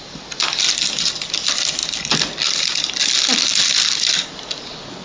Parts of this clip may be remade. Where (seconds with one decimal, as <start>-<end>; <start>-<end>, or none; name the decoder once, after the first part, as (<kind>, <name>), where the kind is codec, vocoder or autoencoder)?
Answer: none